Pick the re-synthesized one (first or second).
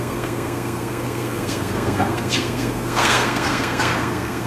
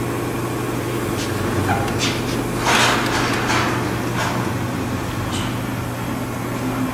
first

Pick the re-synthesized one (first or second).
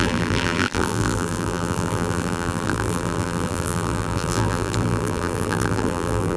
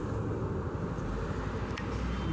first